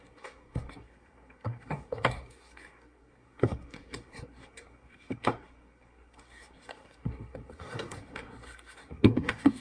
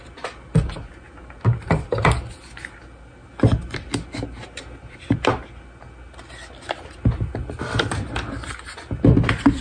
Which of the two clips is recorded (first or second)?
second